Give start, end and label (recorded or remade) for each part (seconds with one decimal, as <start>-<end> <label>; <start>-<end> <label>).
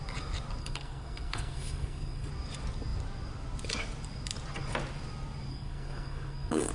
0.0-0.6 recorded; 0.6-2.3 remade; 2.3-5.5 recorded; 5.5-6.7 remade